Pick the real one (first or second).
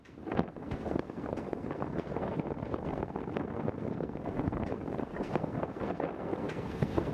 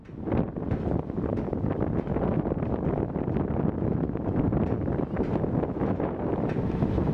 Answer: second